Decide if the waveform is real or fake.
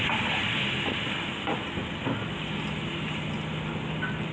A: real